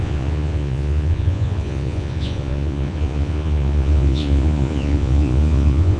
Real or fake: fake